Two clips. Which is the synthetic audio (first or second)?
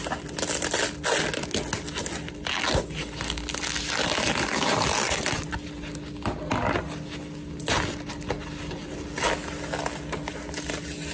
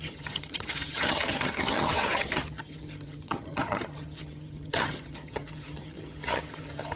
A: second